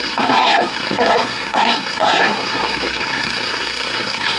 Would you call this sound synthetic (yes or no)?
yes